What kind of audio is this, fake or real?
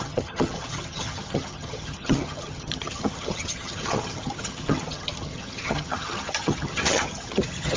fake